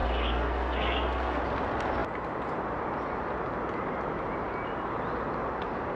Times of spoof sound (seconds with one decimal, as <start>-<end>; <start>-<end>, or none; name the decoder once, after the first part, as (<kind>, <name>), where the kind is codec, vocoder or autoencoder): 0.0-1.4 (codec, SNAC)